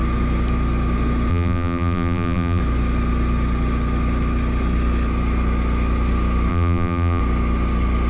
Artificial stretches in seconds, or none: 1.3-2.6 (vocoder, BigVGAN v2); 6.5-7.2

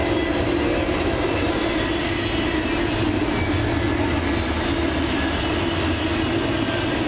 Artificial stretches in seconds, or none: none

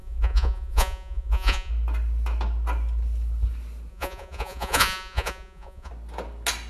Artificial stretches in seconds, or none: 0.0-1.7 (vocoder, Vocos); 3.9-5.9

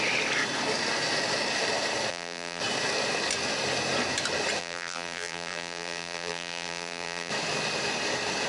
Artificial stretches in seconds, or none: 2.1-2.6 (vocoder, BigVGAN v2); 4.6-7.3

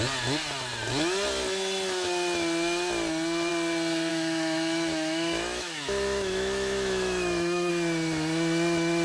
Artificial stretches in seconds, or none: 4.1-7.7 (autoencoder, DAC-VAE)

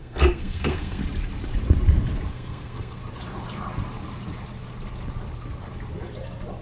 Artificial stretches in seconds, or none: 0.0-1.0 (codec, SNAC); 2.3-3.0

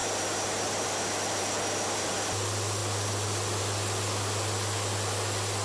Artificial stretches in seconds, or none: none